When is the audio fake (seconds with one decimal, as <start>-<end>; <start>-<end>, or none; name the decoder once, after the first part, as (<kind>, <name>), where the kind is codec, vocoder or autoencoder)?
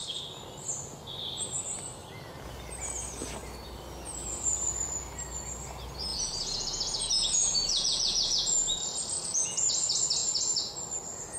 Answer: 6.1-9.7 (vocoder, Vocos); 10.2-10.7